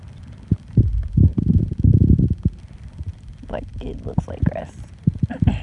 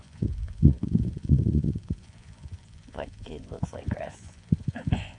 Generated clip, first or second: second